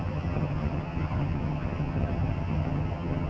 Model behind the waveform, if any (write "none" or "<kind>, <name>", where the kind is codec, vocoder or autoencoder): vocoder, HiFi-GAN